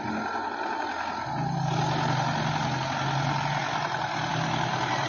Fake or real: real